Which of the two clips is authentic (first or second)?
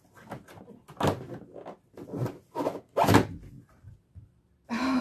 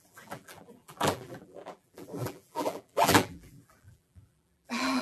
first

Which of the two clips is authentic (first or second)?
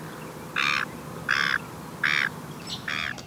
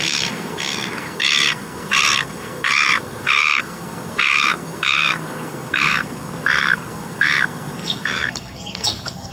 first